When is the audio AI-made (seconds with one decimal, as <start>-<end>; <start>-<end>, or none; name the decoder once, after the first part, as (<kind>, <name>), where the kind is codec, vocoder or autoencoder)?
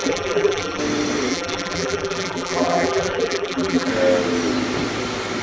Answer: 0.0-0.8 (vocoder, BigVGAN v2); 1.3-3.9